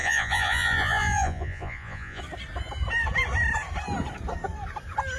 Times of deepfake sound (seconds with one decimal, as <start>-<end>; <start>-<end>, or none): 0.0-2.2